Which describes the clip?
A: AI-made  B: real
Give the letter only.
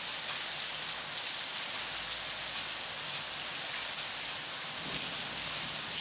B